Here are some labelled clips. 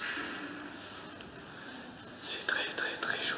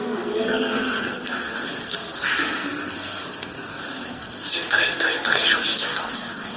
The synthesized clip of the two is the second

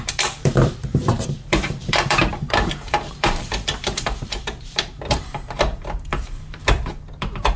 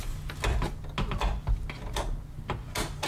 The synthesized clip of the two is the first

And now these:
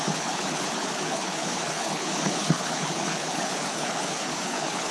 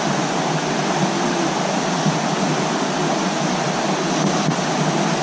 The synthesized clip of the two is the first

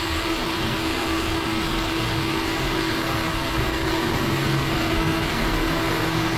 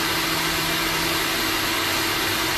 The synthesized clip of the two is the first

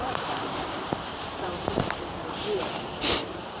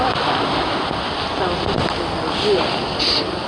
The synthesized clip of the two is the first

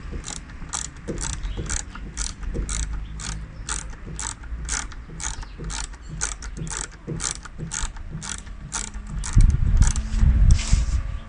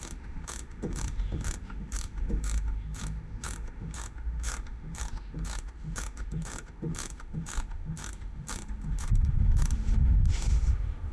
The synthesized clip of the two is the second